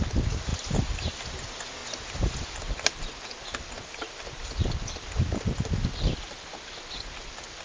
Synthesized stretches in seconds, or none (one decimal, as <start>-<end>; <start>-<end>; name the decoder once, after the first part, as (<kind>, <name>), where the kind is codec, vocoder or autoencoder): none

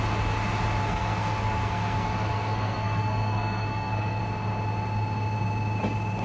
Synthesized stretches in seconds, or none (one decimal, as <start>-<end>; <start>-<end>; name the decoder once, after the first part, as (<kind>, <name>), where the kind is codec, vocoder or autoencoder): 0.8-4.2 (codec, SNAC)